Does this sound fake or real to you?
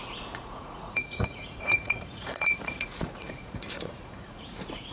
fake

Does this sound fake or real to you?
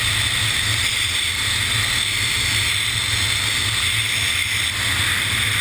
real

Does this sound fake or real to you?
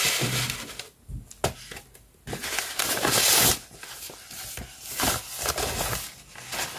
real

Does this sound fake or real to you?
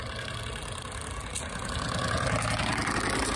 real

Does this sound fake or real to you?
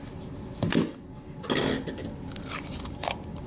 real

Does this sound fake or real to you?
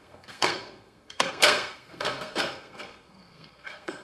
fake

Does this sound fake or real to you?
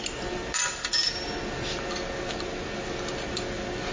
real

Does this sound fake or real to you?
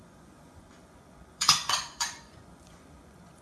fake